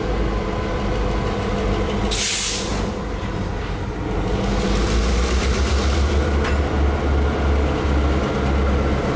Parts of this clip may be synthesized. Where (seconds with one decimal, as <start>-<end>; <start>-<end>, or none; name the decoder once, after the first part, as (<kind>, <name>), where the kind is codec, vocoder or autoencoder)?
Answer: 2.7-3.5 (vocoder, BigVGAN v2)